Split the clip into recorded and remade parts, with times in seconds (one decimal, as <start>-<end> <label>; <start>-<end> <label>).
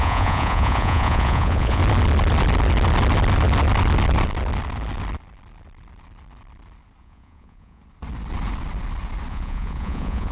0.0-1.8 remade; 1.8-7.0 recorded; 7.0-7.8 remade; 7.8-9.3 recorded; 9.3-10.3 remade